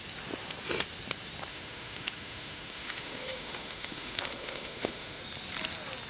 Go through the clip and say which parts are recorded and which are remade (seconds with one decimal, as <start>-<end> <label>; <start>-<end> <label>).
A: 0.0-1.5 recorded; 1.5-5.2 remade; 5.2-6.1 recorded